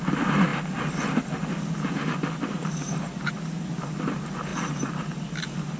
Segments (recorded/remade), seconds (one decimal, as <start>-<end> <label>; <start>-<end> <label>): 0.0-5.8 recorded